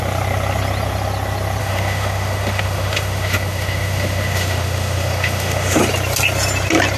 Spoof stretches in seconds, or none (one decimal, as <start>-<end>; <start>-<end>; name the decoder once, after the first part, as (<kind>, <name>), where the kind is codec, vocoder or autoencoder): 1.6-5.8 (autoencoder, DAC-VAE)